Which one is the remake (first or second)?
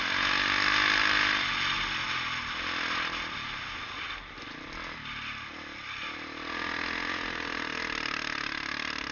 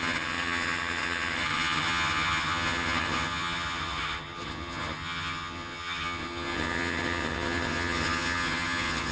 second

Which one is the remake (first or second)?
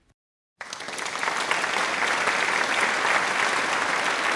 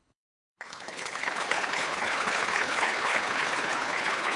second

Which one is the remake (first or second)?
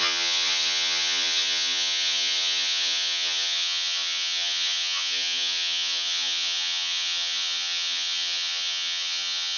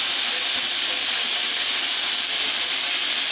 first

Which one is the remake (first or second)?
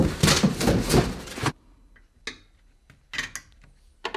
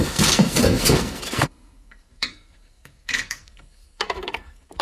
second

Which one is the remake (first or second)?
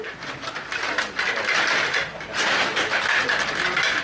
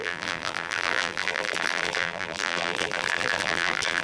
second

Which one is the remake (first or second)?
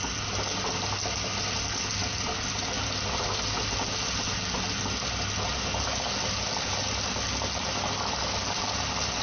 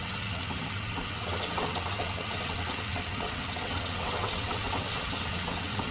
second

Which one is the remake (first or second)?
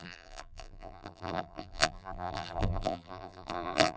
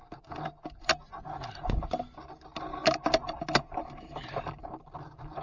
first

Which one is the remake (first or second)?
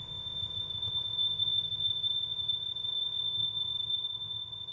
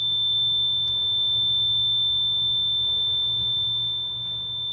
first